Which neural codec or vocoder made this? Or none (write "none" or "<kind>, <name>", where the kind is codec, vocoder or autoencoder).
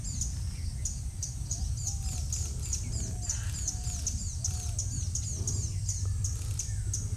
none